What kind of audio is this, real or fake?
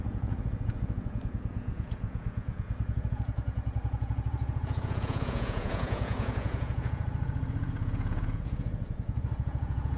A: fake